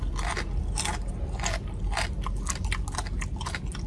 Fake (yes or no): no